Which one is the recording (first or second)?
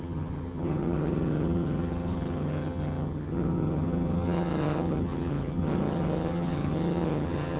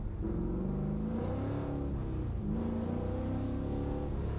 second